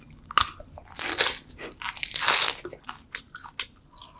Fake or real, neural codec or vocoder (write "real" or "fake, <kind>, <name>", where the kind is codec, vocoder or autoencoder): real